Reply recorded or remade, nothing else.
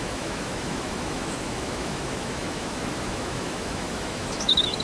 remade